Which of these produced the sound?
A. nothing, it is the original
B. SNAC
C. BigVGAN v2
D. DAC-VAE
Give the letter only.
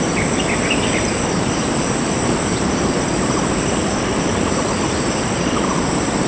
C